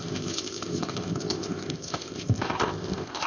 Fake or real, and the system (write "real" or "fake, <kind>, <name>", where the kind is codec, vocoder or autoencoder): fake, codec, ZipCodec